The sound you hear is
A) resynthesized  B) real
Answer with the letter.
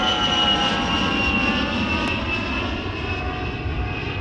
B